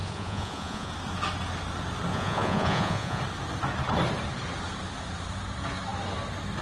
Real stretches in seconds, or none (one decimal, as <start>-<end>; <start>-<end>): 0.9-2.1; 3.2-6.6